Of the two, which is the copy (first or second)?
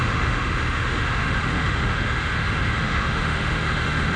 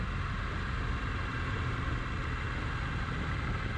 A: first